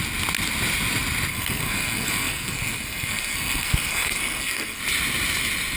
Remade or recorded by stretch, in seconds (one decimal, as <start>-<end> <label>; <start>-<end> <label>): 0.0-1.3 recorded; 1.3-4.8 remade; 4.8-5.8 recorded